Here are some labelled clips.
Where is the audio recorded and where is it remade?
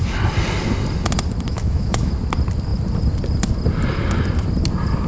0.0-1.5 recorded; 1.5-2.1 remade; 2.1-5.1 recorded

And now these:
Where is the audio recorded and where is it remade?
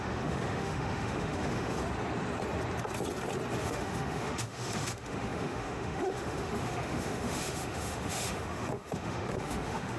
0.0-1.8 remade; 1.8-3.6 recorded; 3.6-10.0 remade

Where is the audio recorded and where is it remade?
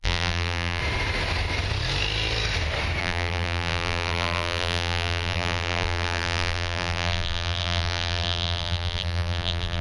0.0-0.8 remade; 0.8-3.0 recorded; 3.0-9.8 remade